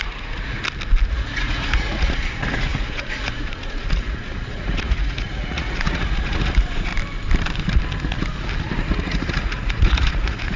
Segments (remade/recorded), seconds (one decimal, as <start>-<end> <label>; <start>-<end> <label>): 0.0-0.6 remade; 0.6-1.1 recorded; 1.1-6.9 remade; 6.9-8.9 recorded; 8.9-10.6 remade